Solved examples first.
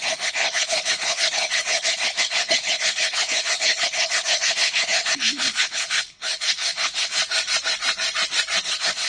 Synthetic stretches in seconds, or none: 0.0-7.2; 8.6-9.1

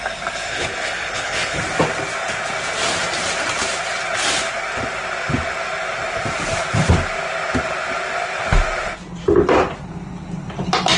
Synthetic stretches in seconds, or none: 0.5-1.6

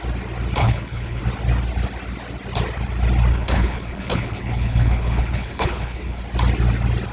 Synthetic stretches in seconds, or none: 0.6-1.2; 3.3-6.2

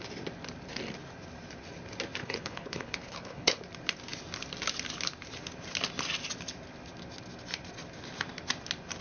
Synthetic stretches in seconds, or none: 2.2-3.6

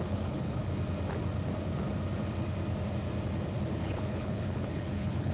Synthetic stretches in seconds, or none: 0.0-0.6; 3.8-5.3

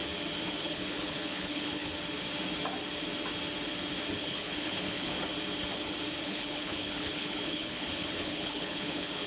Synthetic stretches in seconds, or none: 0.6-1.9; 4.1-5.1; 6.2-9.3

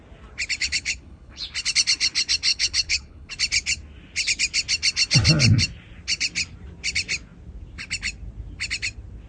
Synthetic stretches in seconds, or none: 0.6-1.4; 2.5-3.3

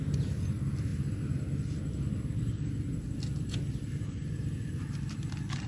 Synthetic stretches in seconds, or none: none